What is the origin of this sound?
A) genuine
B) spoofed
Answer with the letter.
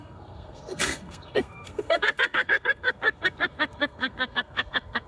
B